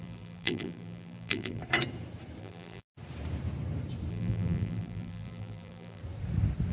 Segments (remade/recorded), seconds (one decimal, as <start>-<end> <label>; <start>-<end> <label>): 0.0-1.6 remade; 1.6-2.4 recorded; 2.4-2.9 remade; 2.9-4.1 recorded; 4.1-6.0 remade; 6.0-6.7 recorded